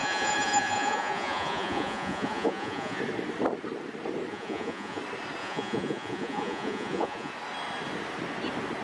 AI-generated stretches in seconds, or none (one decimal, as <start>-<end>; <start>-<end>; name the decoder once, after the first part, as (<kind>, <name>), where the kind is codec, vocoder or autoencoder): 0.0-3.0 (vocoder, Vocos); 4.3-5.0; 5.4-7.3